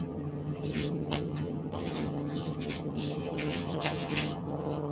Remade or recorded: remade